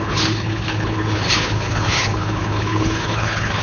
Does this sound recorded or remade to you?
remade